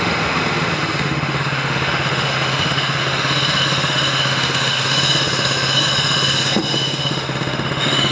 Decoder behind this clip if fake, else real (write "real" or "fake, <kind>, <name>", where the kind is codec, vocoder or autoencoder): fake, autoencoder, DAC-VAE